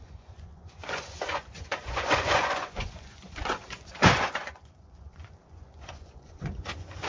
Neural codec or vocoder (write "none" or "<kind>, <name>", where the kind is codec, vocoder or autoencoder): vocoder, Vocos